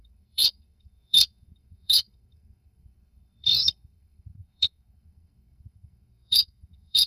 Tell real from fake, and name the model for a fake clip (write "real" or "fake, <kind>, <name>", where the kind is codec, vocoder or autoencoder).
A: fake, codec, SNAC